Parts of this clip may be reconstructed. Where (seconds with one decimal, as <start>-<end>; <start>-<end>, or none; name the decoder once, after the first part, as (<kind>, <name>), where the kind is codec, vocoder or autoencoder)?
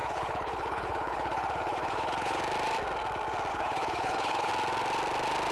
0.0-2.4 (codec, HILCodec); 3.5-4.5